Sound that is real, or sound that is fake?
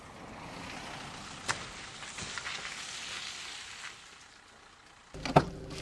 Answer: real